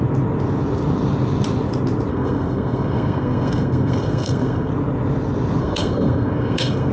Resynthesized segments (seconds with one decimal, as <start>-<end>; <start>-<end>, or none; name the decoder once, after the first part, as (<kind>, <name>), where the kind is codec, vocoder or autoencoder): 2.1-4.7 (codec, SNAC); 5.6-6.9